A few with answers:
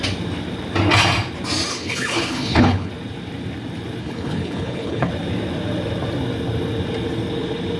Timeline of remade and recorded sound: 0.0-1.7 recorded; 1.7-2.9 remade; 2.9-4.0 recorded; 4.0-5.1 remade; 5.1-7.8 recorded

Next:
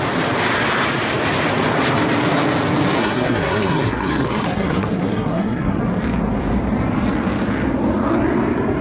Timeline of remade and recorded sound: 0.0-3.0 recorded; 3.0-5.8 remade; 5.8-8.8 recorded

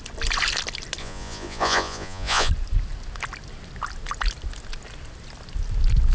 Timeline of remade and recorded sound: 0.0-1.0 recorded; 1.0-2.5 remade; 2.5-6.1 recorded

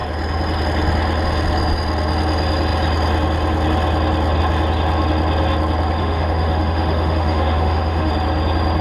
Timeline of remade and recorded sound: 0.0-6.0 recorded; 6.0-8.1 remade; 8.1-8.8 recorded

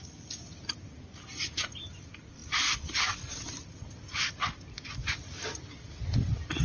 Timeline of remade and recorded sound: 0.0-6.6 recorded

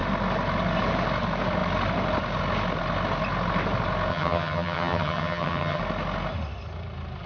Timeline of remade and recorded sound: 0.0-4.1 recorded; 4.1-5.8 remade; 5.8-7.3 recorded

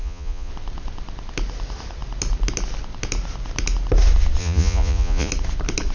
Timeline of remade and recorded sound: 0.0-0.5 remade; 0.5-4.4 recorded; 4.4-5.3 remade; 5.3-5.9 recorded